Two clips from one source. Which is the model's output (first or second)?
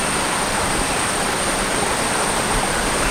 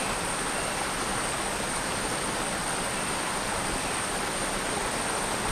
first